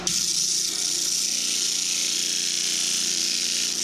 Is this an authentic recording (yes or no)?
yes